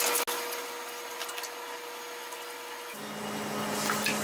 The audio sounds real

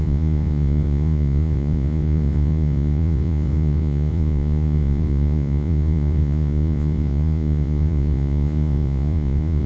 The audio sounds fake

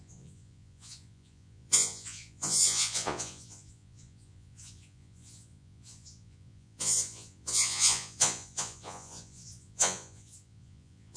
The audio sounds fake